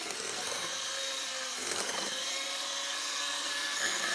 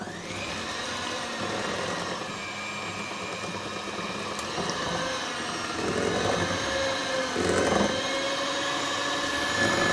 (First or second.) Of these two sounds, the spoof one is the first